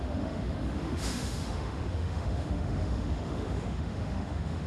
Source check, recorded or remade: remade